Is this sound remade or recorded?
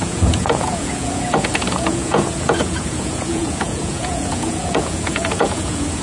remade